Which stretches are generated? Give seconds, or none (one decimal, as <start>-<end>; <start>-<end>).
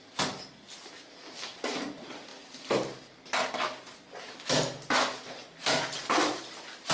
none